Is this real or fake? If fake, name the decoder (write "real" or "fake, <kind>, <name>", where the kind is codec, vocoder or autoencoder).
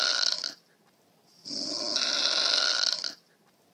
real